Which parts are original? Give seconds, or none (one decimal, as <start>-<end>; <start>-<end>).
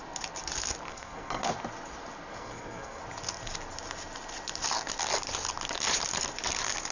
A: 0.0-0.9; 1.5-2.3; 3.0-6.9